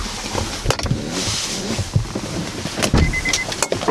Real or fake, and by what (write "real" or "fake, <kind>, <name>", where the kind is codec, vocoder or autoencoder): real